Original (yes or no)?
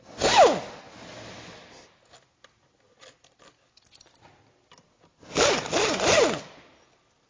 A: yes